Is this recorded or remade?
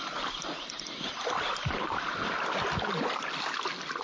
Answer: recorded